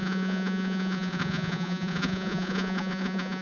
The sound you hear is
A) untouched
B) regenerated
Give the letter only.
B